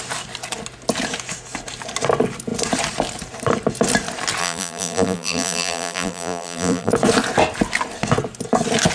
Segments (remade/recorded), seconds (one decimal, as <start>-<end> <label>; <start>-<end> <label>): 0.0-4.4 recorded; 4.4-6.9 remade; 6.9-8.9 recorded